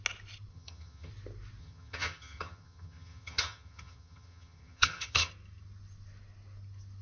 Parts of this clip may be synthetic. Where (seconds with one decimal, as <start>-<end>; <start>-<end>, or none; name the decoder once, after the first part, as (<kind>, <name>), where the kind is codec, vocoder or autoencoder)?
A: 0.5-1.1 (vocoder, HiFi-GAN); 1.6-5.3